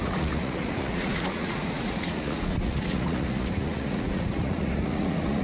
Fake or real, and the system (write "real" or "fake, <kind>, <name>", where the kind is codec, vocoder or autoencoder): fake, vocoder, Vocos